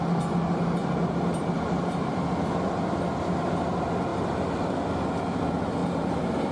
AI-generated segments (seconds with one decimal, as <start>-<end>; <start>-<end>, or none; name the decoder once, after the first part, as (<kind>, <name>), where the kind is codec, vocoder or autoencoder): 0.8-2.1 (vocoder, BigVGAN v2); 5.8-6.5